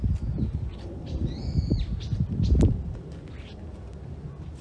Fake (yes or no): no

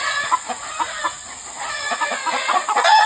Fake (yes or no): yes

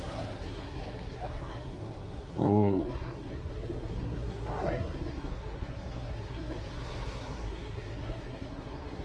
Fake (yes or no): yes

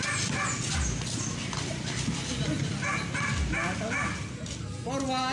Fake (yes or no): no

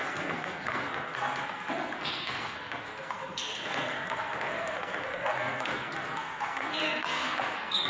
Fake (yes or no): yes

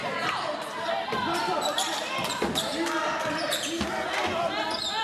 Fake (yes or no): no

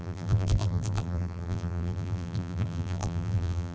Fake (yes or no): yes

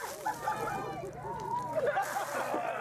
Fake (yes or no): no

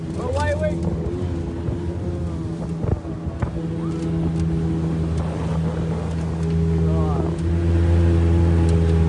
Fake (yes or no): no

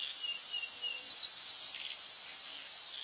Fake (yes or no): no